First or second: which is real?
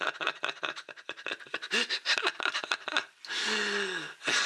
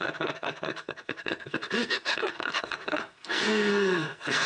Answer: first